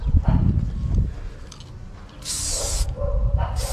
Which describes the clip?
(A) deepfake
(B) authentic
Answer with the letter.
B